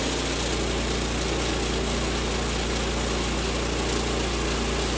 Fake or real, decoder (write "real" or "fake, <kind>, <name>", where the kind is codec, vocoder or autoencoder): real